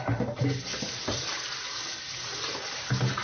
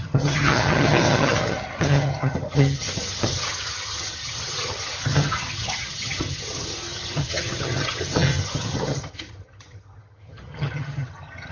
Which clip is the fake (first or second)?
second